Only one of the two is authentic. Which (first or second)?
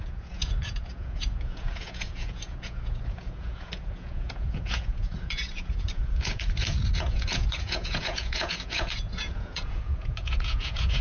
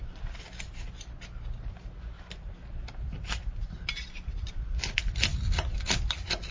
second